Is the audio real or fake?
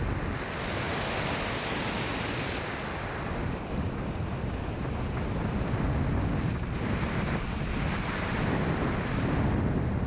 real